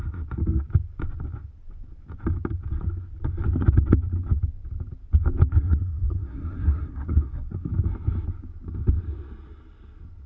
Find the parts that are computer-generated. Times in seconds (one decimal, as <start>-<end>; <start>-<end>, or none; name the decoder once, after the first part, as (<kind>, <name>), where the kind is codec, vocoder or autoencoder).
5.5-7.7 (codec, SNAC)